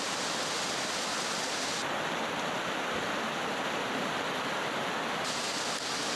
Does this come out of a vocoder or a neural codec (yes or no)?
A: no